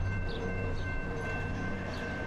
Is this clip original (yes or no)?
no